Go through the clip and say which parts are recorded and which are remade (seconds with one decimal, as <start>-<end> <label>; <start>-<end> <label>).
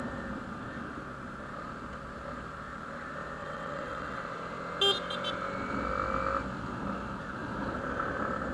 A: 0.0-3.4 recorded; 3.4-4.2 remade; 4.2-8.5 recorded